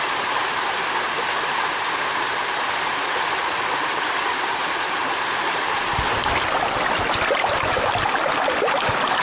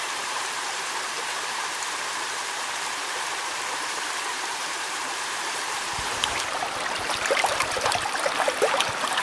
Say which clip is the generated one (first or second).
second